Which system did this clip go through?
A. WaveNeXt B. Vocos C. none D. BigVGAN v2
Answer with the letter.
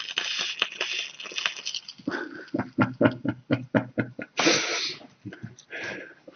C